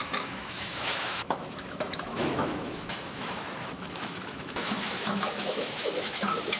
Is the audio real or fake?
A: fake